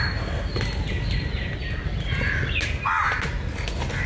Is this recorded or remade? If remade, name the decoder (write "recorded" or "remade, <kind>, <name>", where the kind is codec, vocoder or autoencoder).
recorded